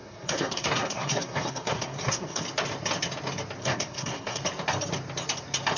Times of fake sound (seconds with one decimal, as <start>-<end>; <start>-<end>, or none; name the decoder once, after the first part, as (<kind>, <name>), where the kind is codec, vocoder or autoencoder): 0.0-2.4 (codec, SNAC); 3.6-4.4